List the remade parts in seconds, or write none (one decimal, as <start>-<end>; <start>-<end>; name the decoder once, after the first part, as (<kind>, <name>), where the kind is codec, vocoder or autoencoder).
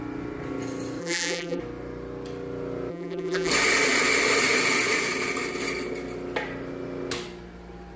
1.0-1.6 (vocoder, BigVGAN v2); 2.9-3.5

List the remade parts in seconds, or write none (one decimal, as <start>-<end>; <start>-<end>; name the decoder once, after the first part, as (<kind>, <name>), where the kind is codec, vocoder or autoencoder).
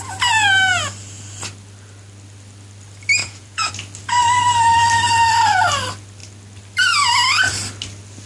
3.2-3.7 (vocoder, Vocos)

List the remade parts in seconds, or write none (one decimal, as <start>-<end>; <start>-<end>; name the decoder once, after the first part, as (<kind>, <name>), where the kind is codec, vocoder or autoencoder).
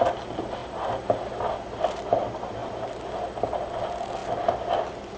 none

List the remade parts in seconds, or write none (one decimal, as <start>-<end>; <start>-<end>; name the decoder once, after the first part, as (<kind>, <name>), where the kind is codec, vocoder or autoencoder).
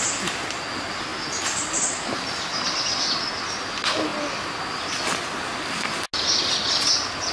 none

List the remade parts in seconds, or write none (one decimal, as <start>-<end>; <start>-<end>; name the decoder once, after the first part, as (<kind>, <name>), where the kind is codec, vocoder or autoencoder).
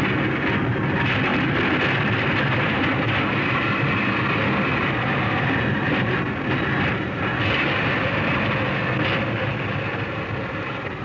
none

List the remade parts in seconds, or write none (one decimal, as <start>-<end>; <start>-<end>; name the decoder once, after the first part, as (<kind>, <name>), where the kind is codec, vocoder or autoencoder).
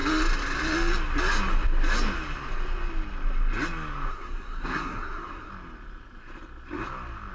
4.1-5.5 (codec, SNAC)